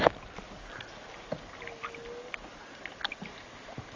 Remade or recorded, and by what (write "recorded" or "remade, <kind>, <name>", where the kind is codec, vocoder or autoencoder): recorded